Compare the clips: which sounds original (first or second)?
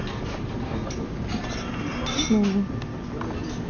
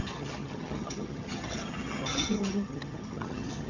first